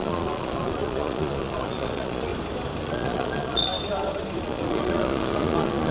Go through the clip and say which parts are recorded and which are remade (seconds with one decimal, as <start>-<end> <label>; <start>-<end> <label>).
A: 0.0-2.3 remade; 2.3-2.8 recorded; 2.8-3.7 remade; 3.7-4.4 recorded; 4.4-5.9 remade